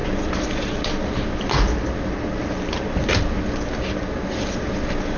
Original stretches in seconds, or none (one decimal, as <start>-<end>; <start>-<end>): 0.0-5.2